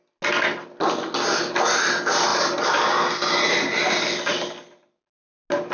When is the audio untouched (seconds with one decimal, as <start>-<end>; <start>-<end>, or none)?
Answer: 0.0-5.7